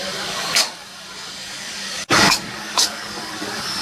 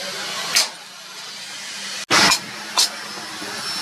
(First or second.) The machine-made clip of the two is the first